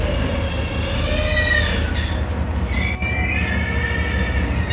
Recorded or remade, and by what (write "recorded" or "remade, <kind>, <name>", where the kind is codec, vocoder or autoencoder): recorded